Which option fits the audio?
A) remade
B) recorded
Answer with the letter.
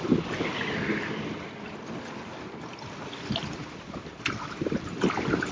B